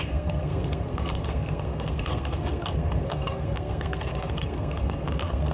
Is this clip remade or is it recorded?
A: remade